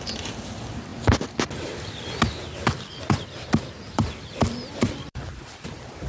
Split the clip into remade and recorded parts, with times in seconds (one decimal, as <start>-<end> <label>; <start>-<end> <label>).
0.0-0.9 remade; 0.9-3.0 recorded; 3.0-6.1 remade